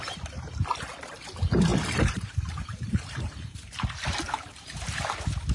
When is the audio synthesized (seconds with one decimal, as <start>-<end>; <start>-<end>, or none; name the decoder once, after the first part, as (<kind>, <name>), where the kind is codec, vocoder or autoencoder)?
1.7-5.0 (vocoder, BigVGAN v2)